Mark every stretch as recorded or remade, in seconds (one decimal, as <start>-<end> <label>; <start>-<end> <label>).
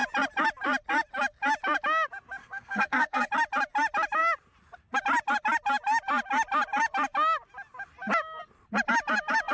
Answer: 0.0-2.4 recorded; 2.4-3.3 remade; 3.3-9.5 recorded